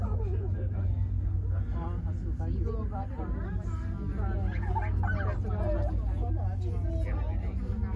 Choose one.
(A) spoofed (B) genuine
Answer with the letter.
B